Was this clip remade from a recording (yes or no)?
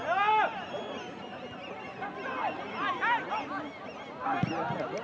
no